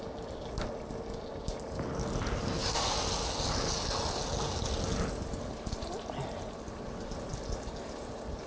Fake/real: real